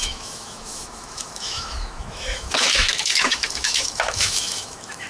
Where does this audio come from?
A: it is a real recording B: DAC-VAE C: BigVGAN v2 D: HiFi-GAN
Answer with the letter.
B